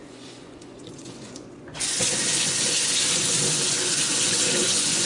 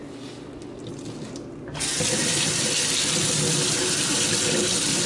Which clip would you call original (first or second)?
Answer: second